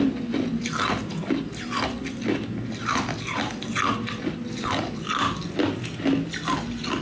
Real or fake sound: real